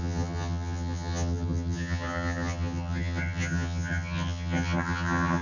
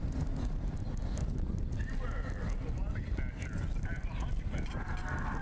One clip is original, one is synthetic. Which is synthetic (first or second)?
first